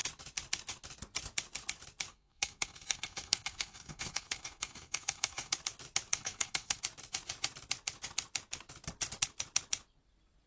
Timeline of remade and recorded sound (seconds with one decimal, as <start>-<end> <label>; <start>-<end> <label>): 0.0-2.1 recorded; 2.1-5.5 remade; 5.5-6.1 recorded; 6.1-6.8 remade; 6.8-10.5 recorded

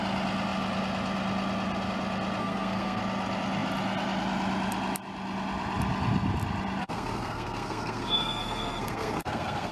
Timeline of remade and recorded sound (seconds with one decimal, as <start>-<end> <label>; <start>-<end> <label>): 0.0-2.4 recorded; 2.4-3.0 remade; 3.0-6.8 recorded; 6.8-9.7 remade

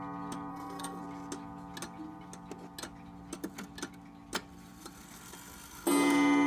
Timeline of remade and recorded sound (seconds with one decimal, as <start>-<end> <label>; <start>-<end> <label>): 0.0-0.5 recorded; 0.5-1.0 remade; 1.0-6.5 recorded

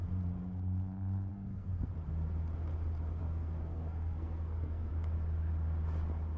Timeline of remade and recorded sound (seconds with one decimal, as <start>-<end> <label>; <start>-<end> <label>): 0.0-1.3 recorded; 1.3-1.9 remade; 1.9-3.2 recorded; 3.2-4.9 remade; 4.9-6.4 recorded

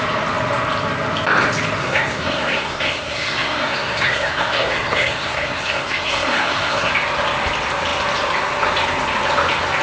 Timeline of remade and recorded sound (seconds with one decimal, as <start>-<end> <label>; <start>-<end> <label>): 0.0-1.8 recorded; 1.8-6.9 remade; 6.9-9.8 recorded

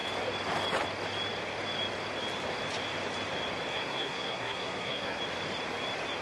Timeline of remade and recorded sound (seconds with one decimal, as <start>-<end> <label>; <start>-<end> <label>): 0.0-3.7 recorded; 3.7-5.2 remade; 5.2-6.2 recorded

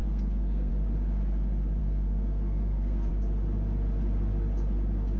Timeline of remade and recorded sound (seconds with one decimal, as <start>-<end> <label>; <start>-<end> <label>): 0.0-0.7 remade; 0.7-1.8 recorded; 1.8-3.1 remade; 3.1-5.2 recorded